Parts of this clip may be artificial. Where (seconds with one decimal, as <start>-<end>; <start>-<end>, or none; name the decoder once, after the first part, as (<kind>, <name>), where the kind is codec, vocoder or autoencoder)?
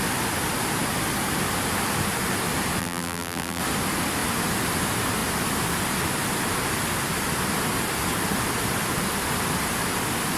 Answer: 2.8-3.6 (vocoder, BigVGAN v2)